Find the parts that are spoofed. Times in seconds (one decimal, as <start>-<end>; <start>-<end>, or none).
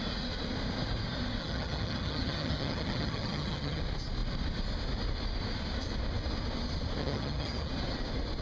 1.4-3.8; 7.0-7.7